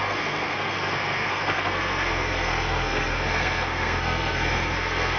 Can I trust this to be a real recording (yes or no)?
no